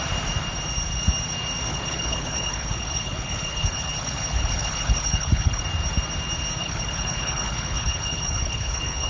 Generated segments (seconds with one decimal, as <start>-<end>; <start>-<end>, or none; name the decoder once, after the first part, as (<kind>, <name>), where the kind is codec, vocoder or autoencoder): 1.7-5.6 (codec, HILCodec); 6.6-9.1